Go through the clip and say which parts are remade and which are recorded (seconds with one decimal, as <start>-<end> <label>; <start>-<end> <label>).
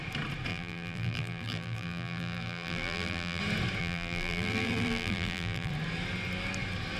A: 0.0-0.5 recorded; 0.5-3.4 remade; 3.4-3.8 recorded; 3.8-5.7 remade; 5.7-7.0 recorded